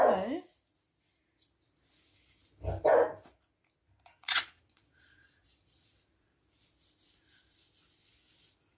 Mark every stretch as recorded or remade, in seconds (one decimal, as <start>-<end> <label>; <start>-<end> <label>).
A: 0.0-4.2 recorded; 4.2-6.0 remade; 6.0-8.8 recorded